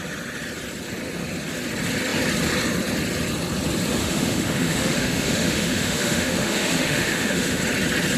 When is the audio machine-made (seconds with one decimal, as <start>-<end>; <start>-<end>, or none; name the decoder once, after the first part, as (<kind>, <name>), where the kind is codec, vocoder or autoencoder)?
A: 4.0-7.6 (autoencoder, DAC-VAE)